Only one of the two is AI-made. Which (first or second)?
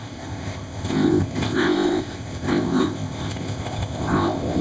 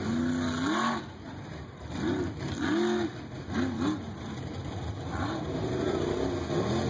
first